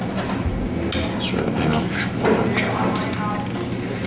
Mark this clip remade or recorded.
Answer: recorded